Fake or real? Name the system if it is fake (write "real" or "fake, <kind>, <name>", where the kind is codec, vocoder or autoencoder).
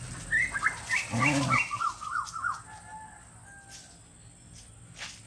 real